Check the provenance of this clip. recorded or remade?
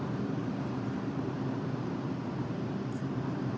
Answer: remade